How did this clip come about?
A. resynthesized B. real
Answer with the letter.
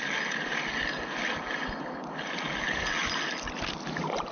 B